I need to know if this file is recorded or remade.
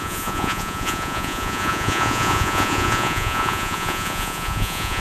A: remade